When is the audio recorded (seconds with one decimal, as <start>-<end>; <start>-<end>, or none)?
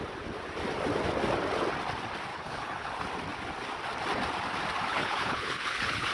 0.0-2.3; 2.9-4.9